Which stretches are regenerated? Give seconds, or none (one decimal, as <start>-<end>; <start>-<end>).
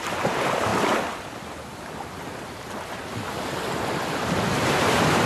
0.0-0.7; 3.9-5.3